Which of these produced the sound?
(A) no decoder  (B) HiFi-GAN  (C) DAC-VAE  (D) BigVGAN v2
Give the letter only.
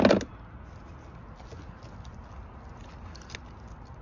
A